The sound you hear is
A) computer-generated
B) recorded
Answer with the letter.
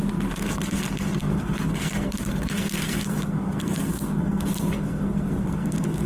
A